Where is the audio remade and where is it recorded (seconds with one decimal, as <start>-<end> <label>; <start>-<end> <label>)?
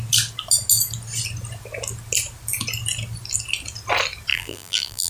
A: 0.0-4.3 recorded; 4.3-5.1 remade